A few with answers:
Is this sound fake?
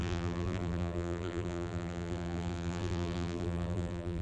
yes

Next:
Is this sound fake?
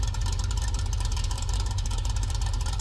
yes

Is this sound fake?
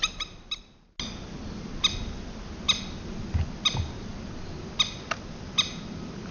no